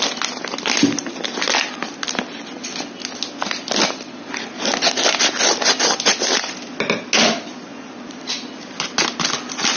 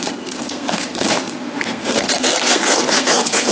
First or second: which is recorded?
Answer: first